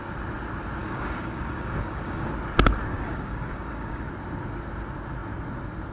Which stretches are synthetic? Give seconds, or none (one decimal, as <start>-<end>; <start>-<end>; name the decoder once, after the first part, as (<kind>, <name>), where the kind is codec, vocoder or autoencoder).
0.8-2.3 (codec, DAC); 2.9-4.0